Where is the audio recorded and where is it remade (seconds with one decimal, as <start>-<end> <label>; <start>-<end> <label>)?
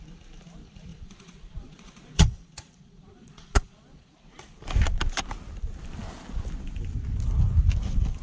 0.0-0.9 recorded; 0.9-4.1 remade; 4.1-8.2 recorded